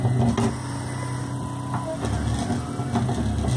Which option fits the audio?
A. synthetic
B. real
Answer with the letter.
B